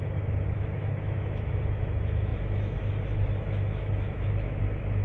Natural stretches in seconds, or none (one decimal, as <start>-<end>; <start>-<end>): none